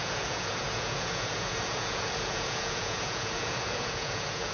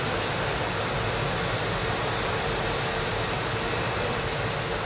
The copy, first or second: first